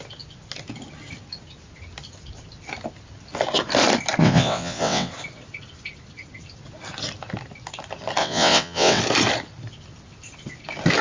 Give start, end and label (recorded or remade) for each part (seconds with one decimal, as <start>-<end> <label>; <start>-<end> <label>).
0.0-4.2 recorded; 4.2-5.1 remade; 5.1-8.2 recorded; 8.2-9.0 remade; 9.0-11.0 recorded